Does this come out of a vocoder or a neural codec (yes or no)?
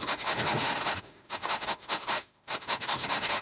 yes